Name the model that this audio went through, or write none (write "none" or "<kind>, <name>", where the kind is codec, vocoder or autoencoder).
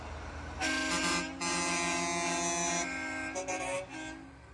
none